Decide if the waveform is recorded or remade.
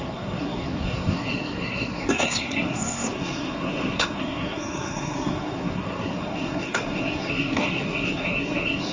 remade